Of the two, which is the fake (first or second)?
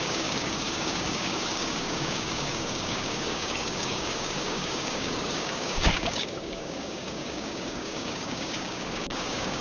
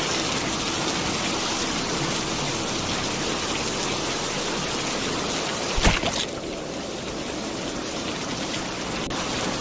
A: first